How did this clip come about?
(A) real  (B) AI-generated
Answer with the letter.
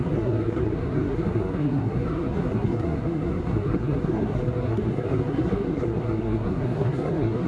B